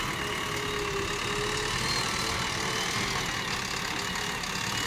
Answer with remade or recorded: recorded